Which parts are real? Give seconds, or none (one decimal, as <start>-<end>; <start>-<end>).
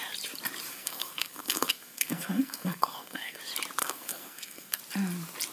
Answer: 0.0-0.7; 3.4-3.8; 4.8-5.5